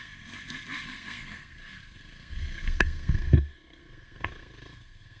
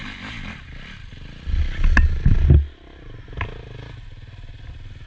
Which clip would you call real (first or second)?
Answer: second